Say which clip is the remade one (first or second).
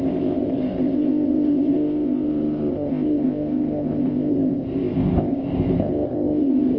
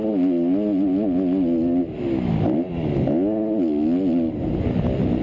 first